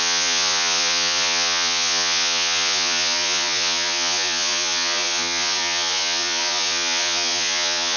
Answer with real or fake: fake